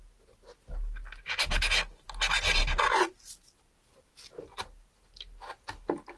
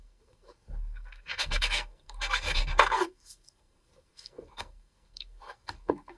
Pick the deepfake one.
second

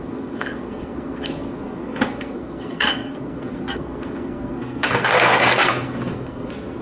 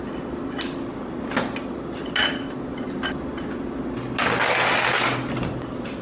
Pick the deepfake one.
first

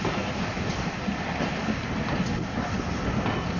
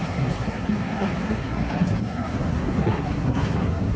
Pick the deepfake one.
second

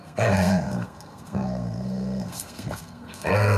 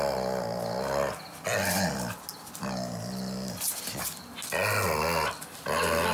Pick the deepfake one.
first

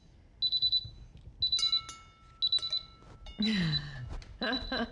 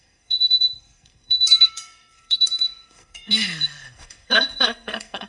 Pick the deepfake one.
second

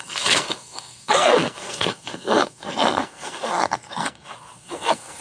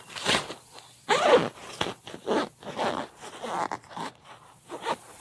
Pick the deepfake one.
first